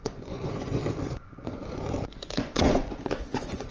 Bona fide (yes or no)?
no